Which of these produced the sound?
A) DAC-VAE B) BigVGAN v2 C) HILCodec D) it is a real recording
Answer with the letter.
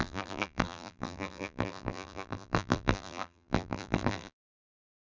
B